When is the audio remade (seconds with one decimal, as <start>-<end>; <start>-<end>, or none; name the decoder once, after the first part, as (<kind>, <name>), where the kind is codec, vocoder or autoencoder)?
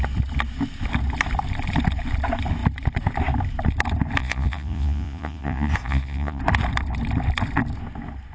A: 4.2-6.4 (vocoder, Vocos)